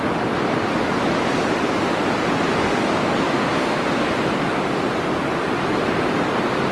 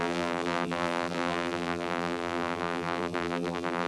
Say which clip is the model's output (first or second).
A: second